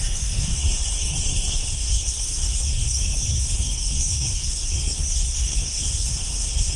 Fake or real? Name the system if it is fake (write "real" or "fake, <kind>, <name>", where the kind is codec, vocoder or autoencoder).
fake, codec, SNAC